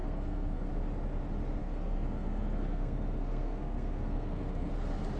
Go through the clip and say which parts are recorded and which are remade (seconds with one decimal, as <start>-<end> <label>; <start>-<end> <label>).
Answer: 0.0-0.7 remade; 0.7-1.6 recorded; 1.6-4.7 remade; 4.7-5.2 recorded